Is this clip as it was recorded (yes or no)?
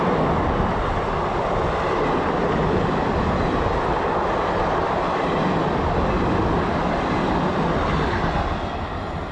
yes